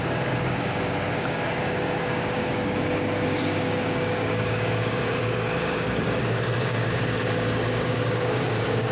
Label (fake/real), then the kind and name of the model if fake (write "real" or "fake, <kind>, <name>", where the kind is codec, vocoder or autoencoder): fake, codec, DAC